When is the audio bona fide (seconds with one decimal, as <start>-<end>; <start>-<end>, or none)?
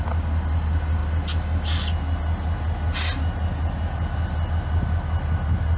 0.0-5.8